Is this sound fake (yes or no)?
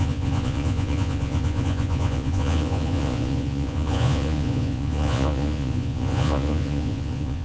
yes